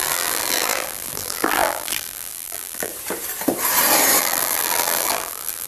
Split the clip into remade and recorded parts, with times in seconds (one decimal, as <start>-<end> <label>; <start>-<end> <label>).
0.0-2.9 remade; 2.9-4.2 recorded; 4.2-5.7 remade